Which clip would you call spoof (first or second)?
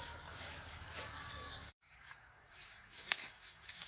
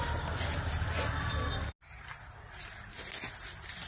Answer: first